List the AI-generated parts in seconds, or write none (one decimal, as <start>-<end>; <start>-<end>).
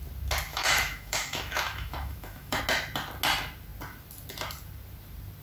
0.5-2.6